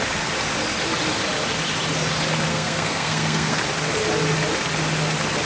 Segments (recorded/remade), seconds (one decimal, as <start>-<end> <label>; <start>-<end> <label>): 0.0-2.5 recorded; 2.5-3.6 remade; 3.6-5.5 recorded